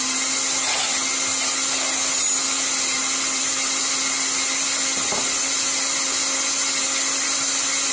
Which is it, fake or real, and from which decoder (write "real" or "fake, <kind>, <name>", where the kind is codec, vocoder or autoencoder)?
real